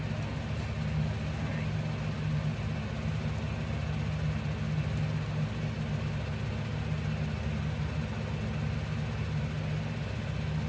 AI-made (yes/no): no